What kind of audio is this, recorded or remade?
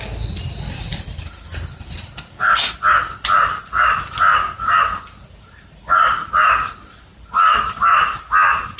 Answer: recorded